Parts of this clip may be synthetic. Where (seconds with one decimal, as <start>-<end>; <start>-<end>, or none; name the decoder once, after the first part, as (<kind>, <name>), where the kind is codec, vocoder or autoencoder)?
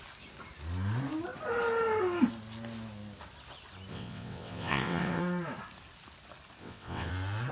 3.9-5.2 (vocoder, WaveNeXt); 6.6-7.1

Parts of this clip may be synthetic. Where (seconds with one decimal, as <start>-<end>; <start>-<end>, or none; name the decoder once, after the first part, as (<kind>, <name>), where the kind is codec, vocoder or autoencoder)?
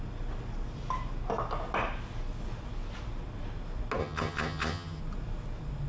4.0-5.0 (vocoder, HiFi-GAN)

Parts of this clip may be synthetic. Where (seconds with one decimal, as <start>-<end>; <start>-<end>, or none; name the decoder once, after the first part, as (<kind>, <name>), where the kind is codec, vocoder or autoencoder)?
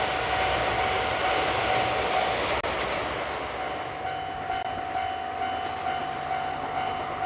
none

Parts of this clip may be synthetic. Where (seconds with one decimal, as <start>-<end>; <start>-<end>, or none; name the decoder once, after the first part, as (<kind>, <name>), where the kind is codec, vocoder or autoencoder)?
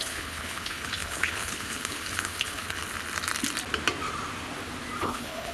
0.0-2.8 (codec, HILCodec); 5.0-5.5